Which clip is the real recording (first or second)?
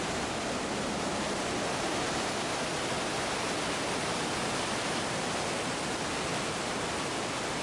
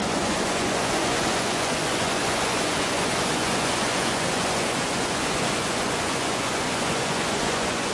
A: first